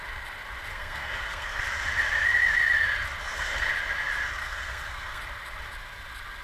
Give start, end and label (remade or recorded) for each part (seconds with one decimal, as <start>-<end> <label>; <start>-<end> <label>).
0.0-0.7 recorded; 0.7-1.6 remade; 1.6-3.2 recorded; 3.2-3.7 remade; 3.7-4.4 recorded; 4.4-5.2 remade; 5.2-6.4 recorded